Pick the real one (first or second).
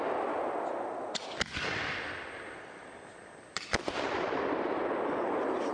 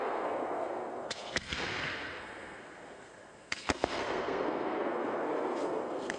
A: first